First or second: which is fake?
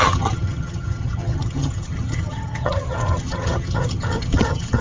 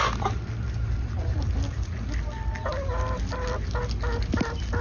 first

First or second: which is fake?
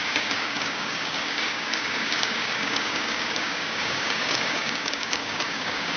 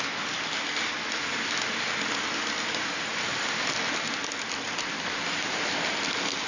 first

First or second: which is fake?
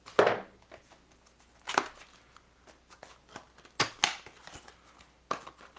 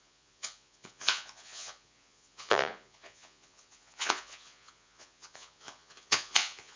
second